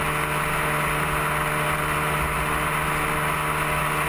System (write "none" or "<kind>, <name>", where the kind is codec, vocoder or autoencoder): none